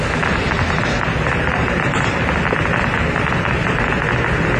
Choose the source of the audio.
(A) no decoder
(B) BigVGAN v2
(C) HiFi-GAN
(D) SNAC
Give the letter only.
A